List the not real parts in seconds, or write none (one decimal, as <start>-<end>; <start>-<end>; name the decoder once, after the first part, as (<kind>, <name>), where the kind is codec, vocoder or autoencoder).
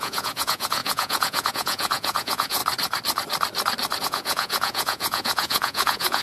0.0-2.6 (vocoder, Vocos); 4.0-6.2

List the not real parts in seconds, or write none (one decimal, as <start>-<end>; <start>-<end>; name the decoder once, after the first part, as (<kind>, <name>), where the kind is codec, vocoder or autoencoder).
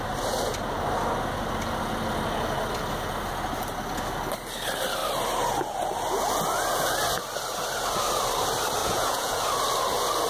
8.8-9.4 (vocoder, Vocos)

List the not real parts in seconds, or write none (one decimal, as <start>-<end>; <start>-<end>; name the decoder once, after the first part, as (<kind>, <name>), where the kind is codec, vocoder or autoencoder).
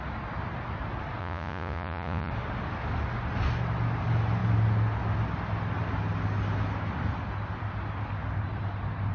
1.2-2.3 (vocoder, Vocos)